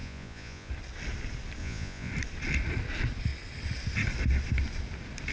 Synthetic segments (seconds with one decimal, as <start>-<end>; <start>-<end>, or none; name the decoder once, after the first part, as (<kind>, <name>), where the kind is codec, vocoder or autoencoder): 0.0-0.7 (vocoder, Vocos); 1.6-2.1